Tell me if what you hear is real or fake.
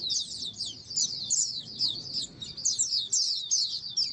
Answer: real